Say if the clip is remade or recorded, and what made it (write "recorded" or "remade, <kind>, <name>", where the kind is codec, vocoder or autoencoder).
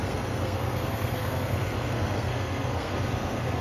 remade, codec, SNAC